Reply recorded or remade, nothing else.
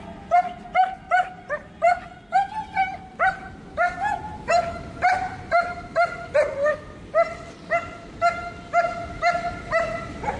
recorded